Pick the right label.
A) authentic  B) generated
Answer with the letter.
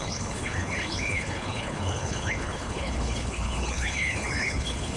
B